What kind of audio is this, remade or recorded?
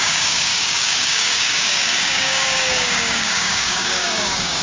remade